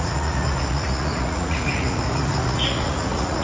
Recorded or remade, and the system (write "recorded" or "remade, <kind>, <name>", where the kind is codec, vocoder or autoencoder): remade, vocoder, Vocos